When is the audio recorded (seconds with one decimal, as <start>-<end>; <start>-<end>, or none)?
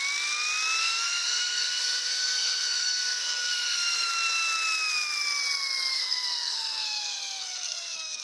0.0-0.8; 4.1-5.9